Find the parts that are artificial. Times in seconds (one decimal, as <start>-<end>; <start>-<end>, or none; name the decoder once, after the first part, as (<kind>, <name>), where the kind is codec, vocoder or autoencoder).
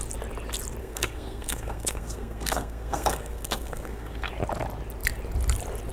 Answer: 0.8-4.3 (codec, SNAC)